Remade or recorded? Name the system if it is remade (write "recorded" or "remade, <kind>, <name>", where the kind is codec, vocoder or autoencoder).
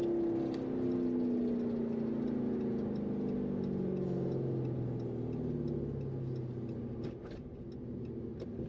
recorded